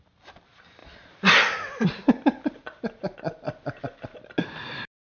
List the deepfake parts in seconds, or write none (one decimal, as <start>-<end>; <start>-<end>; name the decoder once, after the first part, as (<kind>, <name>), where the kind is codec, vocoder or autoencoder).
none